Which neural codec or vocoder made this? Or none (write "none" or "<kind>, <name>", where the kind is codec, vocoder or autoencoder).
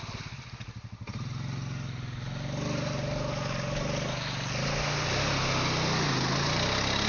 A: none